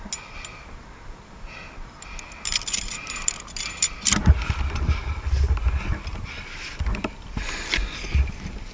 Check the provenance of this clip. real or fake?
real